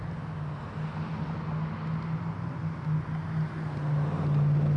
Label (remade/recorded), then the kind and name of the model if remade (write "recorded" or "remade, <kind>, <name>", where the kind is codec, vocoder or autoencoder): recorded